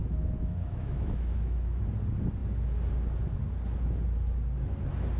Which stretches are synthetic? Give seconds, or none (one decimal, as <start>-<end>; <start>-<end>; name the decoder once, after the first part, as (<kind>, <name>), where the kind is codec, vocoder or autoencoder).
0.0-1.8 (autoencoder, DAC-VAE)